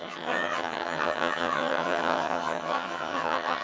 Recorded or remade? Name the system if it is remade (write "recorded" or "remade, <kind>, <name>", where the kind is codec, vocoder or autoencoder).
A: remade, vocoder, HiFi-GAN